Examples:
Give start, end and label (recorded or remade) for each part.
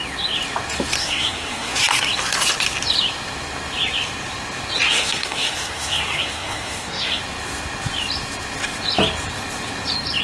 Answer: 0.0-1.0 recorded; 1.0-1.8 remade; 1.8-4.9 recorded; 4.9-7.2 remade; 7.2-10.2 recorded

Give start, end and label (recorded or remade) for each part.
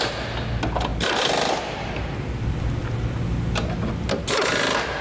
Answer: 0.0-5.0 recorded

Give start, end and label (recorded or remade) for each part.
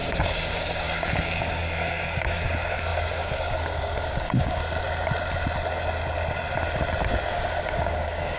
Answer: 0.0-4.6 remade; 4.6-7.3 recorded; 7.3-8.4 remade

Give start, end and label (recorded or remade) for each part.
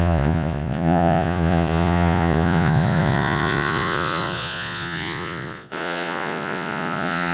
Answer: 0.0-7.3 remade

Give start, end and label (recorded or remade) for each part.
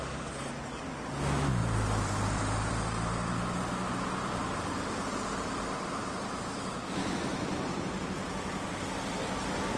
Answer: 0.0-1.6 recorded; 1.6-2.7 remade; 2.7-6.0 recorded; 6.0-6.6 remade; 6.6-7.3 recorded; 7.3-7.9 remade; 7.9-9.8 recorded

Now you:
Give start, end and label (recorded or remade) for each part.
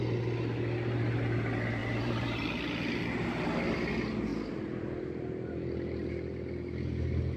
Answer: 0.0-1.8 recorded; 1.8-2.5 remade; 2.5-7.4 recorded